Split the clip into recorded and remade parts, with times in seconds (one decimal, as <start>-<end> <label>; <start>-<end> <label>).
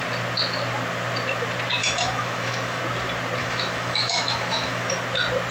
0.0-1.8 recorded; 1.8-2.8 remade; 2.8-3.4 recorded; 3.4-4.9 remade; 4.9-5.5 recorded